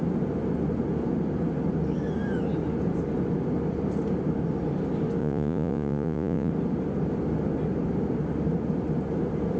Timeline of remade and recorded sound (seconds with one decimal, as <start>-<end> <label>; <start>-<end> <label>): 0.0-5.2 recorded; 5.2-6.5 remade; 6.5-9.6 recorded